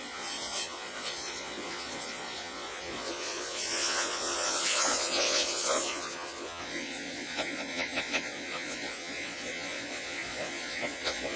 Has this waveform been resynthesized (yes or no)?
yes